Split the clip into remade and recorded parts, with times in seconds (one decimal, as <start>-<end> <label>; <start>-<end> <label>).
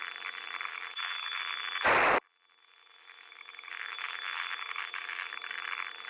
0.0-0.7 recorded; 0.7-1.4 remade; 1.4-2.6 recorded; 2.6-5.3 remade; 5.3-6.1 recorded